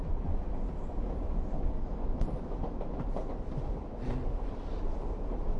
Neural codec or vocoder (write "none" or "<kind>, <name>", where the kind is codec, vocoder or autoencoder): none